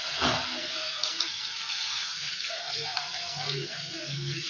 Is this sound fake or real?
fake